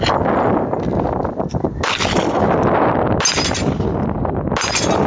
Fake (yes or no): no